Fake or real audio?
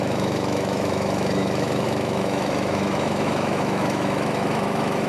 fake